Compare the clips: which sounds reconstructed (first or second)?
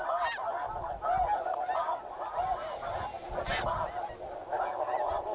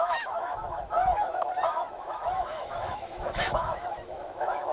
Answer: second